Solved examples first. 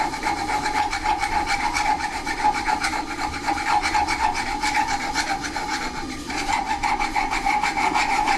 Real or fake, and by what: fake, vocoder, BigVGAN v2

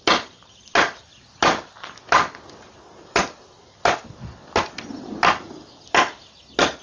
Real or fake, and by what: real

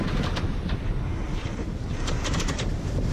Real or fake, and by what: fake, vocoder, BigVGAN v2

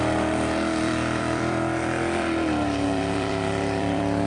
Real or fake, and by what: fake, vocoder, BigVGAN v2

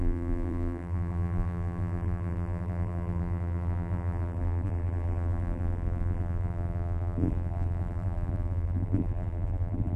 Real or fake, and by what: fake, vocoder, BigVGAN v2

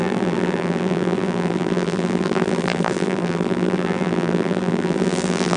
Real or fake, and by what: fake, vocoder, BigVGAN v2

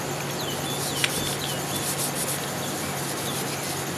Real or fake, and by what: real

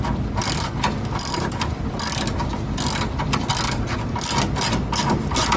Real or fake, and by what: real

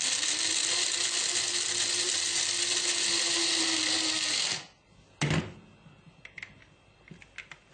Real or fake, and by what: real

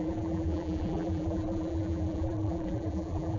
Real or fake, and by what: fake, vocoder, BigVGAN v2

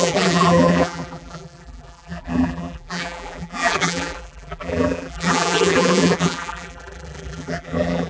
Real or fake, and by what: fake, vocoder, BigVGAN v2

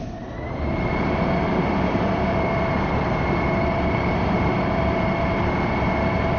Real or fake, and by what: fake, vocoder, BigVGAN v2